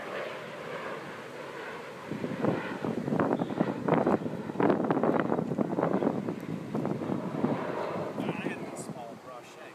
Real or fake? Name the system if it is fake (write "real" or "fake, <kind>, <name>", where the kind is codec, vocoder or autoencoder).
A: real